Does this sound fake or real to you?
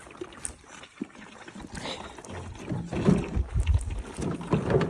real